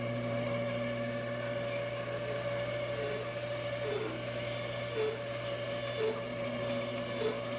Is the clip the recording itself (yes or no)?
yes